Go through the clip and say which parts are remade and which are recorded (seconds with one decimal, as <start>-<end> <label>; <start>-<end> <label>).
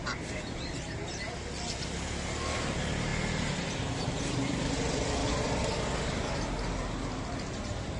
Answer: 0.0-8.0 recorded